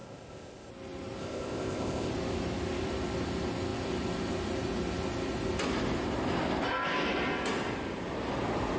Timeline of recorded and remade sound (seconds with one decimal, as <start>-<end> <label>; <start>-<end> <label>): 0.0-0.7 remade; 0.7-1.2 recorded; 1.2-2.1 remade; 2.1-8.8 recorded